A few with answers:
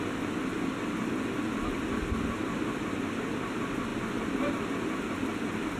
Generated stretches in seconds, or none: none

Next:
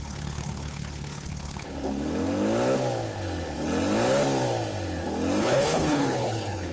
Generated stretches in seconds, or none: 0.0-1.7; 5.4-6.7

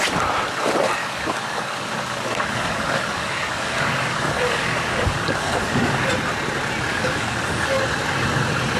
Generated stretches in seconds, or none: 1.0-6.1; 6.9-7.8

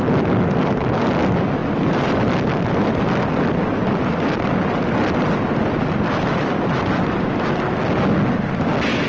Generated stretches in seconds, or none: 1.6-2.3; 2.8-7.5